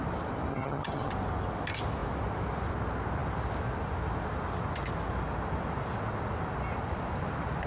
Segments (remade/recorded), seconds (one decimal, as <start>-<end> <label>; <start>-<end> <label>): 0.0-0.5 recorded; 0.5-1.1 remade; 1.1-7.7 recorded